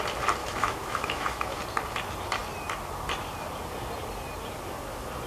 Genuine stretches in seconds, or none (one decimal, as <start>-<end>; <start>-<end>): 0.0-0.4; 1.6-5.3